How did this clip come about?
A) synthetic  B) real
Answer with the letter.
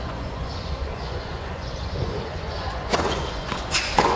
A